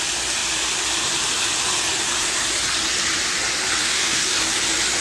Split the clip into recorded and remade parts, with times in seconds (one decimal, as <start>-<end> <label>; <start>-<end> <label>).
0.0-3.8 recorded; 3.8-4.6 remade; 4.6-5.0 recorded